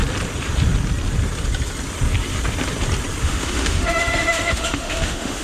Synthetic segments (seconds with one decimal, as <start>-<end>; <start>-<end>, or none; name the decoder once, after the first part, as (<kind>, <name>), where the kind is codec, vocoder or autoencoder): 3.2-5.4 (autoencoder, DAC-VAE)